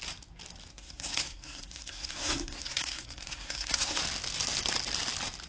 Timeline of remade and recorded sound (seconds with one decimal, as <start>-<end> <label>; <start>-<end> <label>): 0.0-0.7 recorded; 0.7-4.0 remade; 4.0-5.5 recorded